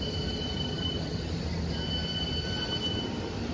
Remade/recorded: recorded